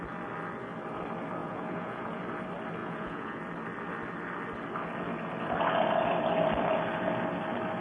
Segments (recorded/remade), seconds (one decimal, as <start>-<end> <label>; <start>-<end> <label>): 0.0-1.4 recorded; 1.4-2.2 remade; 2.2-2.8 recorded; 2.8-3.4 remade; 3.4-7.8 recorded